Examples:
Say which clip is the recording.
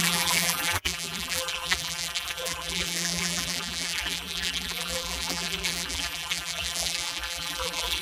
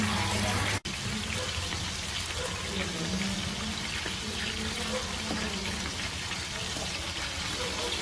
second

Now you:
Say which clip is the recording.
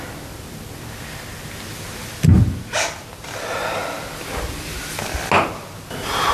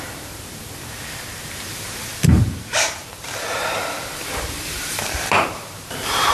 first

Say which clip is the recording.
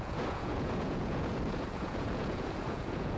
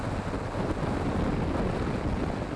second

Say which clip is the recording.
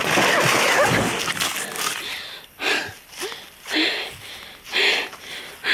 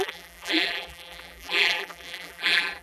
first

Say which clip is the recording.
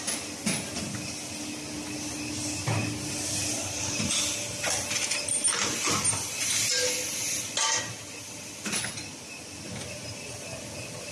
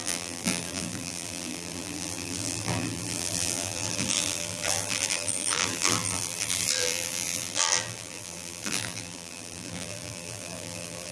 first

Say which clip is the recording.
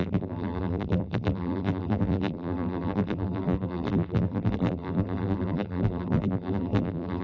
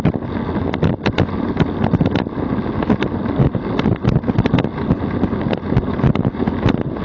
second